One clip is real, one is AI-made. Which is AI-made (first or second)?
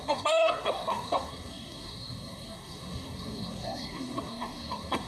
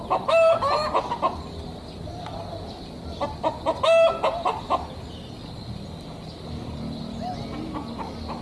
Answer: first